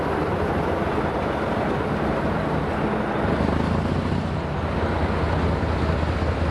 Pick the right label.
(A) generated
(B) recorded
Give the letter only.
B